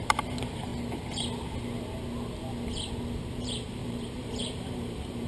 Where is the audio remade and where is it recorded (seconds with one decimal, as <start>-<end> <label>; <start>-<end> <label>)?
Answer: 0.0-0.7 remade; 0.7-3.2 recorded; 3.2-5.3 remade